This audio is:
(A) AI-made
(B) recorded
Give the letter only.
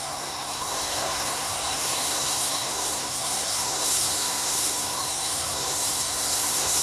A